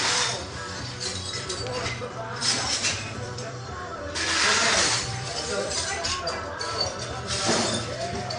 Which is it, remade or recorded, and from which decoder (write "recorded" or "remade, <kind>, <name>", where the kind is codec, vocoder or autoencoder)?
remade, vocoder, BigVGAN v2